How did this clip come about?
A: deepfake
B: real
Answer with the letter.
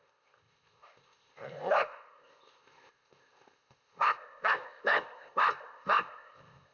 A